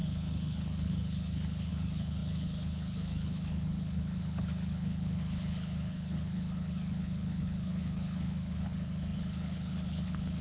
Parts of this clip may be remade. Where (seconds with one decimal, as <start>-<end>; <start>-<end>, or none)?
0.0-10.4